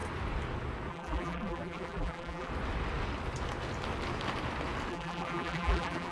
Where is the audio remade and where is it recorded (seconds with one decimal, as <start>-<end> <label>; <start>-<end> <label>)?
0.0-0.9 recorded; 0.9-2.5 remade; 2.5-4.9 recorded; 4.9-6.1 remade